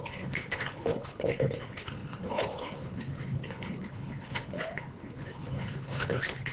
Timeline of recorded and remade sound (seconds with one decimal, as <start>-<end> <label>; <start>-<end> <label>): 0.0-6.5 remade